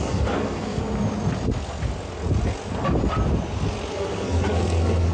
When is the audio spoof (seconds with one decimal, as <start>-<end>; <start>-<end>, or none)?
0.0-0.8; 3.9-5.1